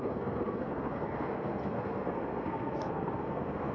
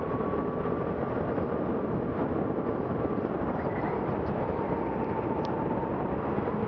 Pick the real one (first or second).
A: second